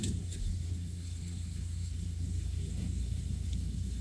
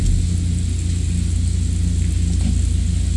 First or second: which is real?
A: second